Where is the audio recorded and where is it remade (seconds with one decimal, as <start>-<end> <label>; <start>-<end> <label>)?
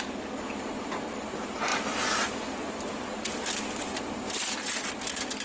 0.0-1.7 recorded; 1.7-4.9 remade; 4.9-5.4 recorded